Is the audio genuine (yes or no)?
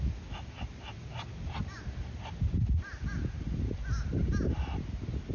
yes